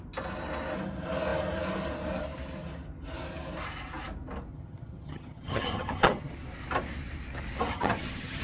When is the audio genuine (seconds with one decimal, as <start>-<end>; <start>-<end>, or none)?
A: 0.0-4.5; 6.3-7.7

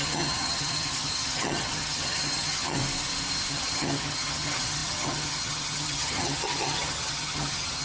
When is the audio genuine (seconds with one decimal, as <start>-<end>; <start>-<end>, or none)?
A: 2.8-3.5

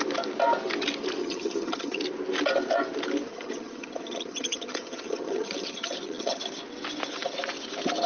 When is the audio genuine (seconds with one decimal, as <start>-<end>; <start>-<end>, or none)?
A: 0.0-1.2; 2.0-3.3; 6.4-8.1

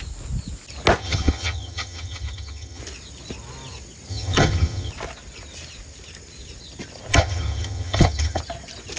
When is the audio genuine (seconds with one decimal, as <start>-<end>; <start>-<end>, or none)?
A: 0.0-1.0; 2.8-4.1; 4.9-7.1; 8.4-9.0

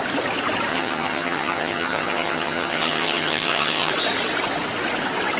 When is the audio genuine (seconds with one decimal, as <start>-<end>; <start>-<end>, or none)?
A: 0.0-0.7; 3.9-5.4